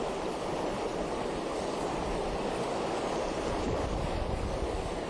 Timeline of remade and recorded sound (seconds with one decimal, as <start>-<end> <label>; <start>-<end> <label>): 0.0-5.1 recorded